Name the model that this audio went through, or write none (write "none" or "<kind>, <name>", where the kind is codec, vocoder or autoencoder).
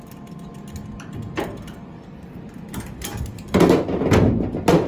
none